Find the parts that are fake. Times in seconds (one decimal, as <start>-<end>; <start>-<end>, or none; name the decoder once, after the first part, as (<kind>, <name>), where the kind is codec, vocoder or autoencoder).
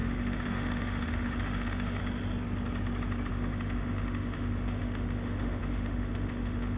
0.0-2.0 (autoencoder, DAC-VAE); 3.3-6.8